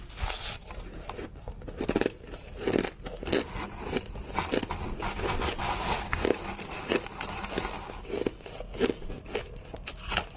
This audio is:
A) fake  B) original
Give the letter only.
B